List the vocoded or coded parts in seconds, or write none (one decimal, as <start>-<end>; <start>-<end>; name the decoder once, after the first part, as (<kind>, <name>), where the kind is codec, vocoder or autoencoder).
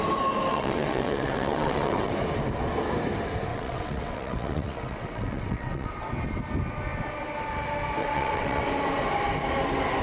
0.5-2.1 (vocoder, WaveNeXt); 3.5-5.9; 8.0-8.6